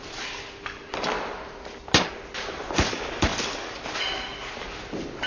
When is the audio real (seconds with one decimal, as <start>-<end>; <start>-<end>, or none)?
0.0-5.3